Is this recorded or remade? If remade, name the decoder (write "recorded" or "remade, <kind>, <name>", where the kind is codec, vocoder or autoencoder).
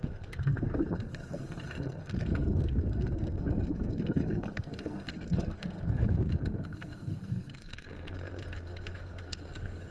remade, codec, SNAC